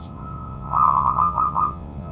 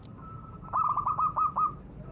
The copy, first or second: first